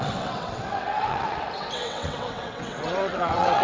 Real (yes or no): no